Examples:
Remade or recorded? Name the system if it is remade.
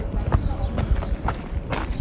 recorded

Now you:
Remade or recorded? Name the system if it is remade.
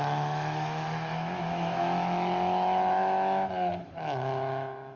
remade, autoencoder, DAC-VAE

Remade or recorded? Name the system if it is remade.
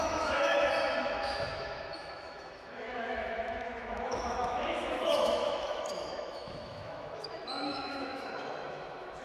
remade, autoencoder, DAC-VAE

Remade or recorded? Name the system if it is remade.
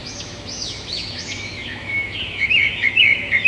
remade, autoencoder, DAC-VAE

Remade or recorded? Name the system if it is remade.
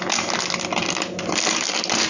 recorded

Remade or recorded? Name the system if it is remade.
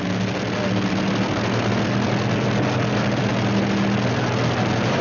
recorded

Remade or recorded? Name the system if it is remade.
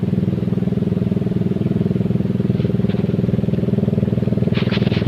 recorded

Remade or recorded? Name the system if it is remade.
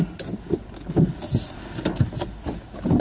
recorded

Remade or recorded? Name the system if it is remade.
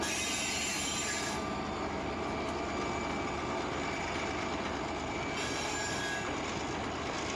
recorded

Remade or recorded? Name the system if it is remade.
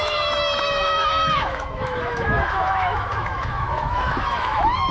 remade, autoencoder, DAC-VAE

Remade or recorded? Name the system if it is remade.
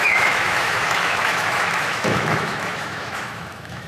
remade, autoencoder, DAC-VAE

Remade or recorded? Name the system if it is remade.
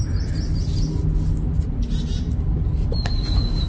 recorded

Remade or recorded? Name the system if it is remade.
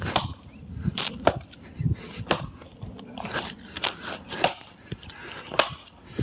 recorded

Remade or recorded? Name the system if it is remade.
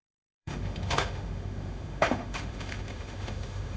remade, autoencoder, DAC-VAE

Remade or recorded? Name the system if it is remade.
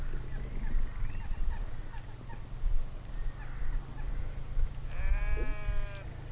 recorded